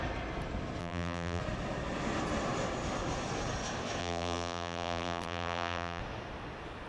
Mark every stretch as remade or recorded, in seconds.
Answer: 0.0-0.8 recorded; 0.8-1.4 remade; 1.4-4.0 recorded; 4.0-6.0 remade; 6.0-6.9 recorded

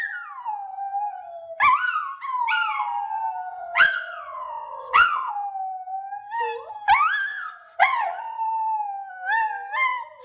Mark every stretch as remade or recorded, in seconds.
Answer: 0.0-3.5 recorded; 3.5-5.3 remade; 5.3-7.3 recorded; 7.3-8.4 remade; 8.4-10.2 recorded